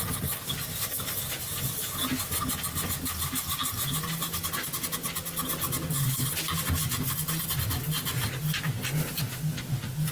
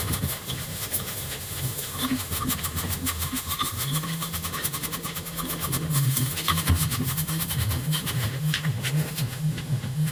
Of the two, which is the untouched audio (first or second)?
first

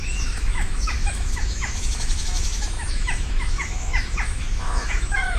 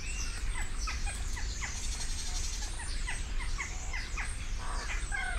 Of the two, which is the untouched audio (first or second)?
second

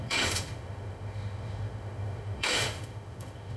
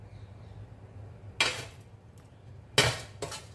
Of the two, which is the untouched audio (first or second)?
second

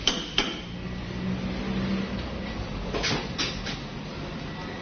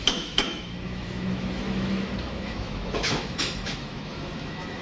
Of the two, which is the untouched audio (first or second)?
first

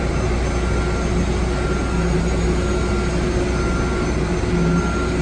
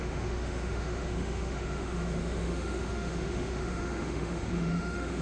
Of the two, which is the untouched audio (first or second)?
first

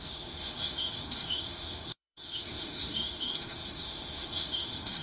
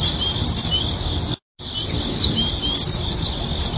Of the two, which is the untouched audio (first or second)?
second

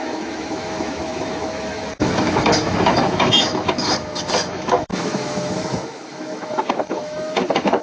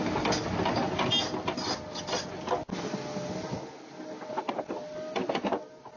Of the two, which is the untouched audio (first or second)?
second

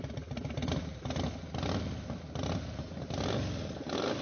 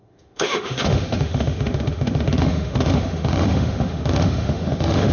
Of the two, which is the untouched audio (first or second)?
first